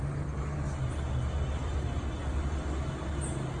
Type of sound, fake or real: real